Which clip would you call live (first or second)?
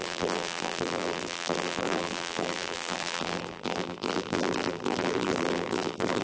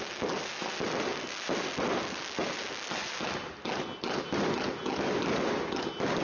second